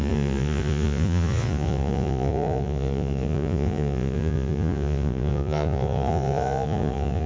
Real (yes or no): no